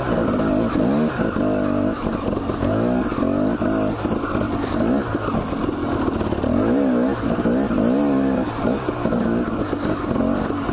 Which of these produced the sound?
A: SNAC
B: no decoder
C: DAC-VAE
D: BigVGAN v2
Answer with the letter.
B